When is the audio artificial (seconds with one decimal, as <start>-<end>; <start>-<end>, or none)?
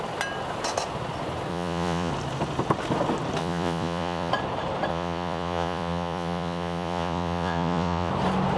1.5-2.1; 3.4-4.3; 4.9-8.1